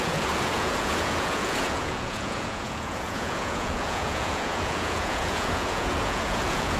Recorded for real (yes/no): no